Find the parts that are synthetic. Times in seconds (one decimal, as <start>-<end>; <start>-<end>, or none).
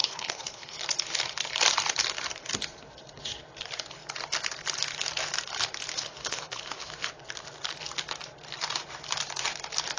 0.0-0.8; 5.9-6.9